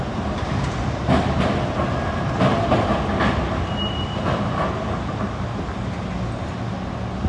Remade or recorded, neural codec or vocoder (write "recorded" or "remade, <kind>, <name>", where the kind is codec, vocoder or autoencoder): recorded